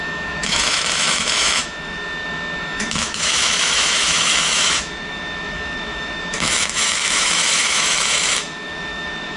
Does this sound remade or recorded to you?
remade